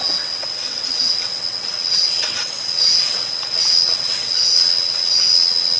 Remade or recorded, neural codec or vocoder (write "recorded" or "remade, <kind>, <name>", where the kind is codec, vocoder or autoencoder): remade, vocoder, WaveNeXt